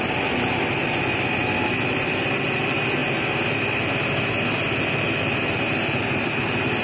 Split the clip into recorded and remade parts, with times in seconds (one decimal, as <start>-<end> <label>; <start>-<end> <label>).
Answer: 0.0-3.0 remade; 3.0-4.5 recorded; 4.5-6.8 remade